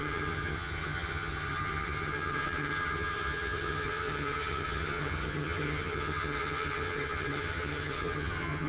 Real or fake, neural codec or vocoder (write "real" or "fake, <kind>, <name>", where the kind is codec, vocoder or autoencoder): fake, vocoder, HiFi-GAN